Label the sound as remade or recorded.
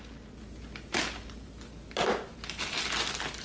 recorded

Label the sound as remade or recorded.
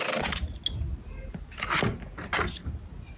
recorded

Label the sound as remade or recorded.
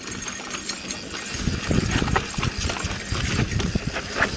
recorded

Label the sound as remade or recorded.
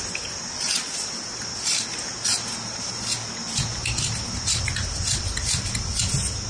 recorded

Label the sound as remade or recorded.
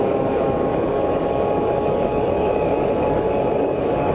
remade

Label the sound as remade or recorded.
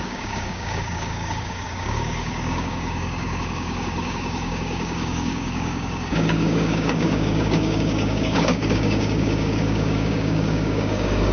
remade